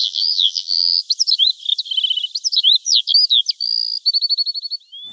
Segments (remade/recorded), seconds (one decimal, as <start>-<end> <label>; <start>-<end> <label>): 0.0-1.0 remade; 1.0-5.1 recorded